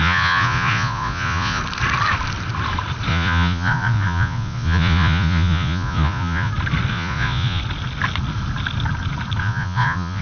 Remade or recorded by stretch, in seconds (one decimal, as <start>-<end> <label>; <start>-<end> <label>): 0.0-1.6 remade; 1.6-3.1 recorded; 3.1-6.5 remade; 6.5-6.9 recorded; 6.9-7.6 remade; 7.6-9.4 recorded; 9.4-10.2 remade